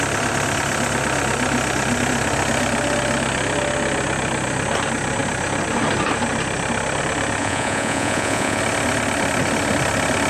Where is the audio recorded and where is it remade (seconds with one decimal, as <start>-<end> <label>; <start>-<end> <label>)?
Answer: 0.0-7.4 recorded; 7.4-8.6 remade; 8.6-10.3 recorded